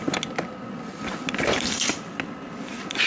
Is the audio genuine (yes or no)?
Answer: yes